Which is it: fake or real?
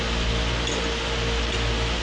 real